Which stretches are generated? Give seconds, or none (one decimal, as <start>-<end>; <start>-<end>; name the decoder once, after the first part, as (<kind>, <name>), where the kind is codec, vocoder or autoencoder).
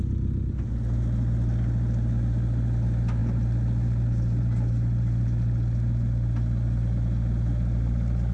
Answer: none